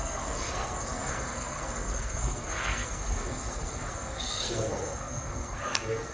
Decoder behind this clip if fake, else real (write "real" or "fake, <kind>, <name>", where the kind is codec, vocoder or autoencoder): fake, codec, SNAC